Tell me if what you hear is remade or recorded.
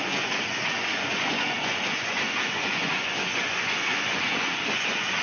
remade